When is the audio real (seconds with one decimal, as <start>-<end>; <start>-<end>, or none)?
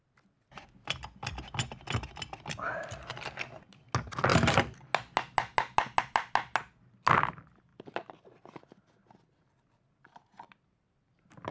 0.0-11.5